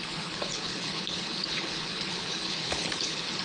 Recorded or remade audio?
remade